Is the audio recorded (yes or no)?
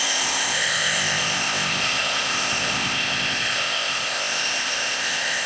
no